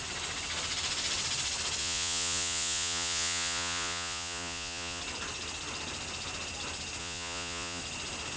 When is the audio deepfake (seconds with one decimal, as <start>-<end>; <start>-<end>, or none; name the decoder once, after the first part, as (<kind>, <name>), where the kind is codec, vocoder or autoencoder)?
1.8-5.0 (vocoder, Vocos); 7.0-7.8